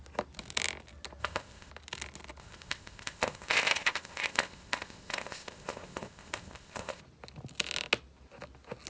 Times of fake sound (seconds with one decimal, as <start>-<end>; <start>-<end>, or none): 1.2-1.7; 2.4-7.0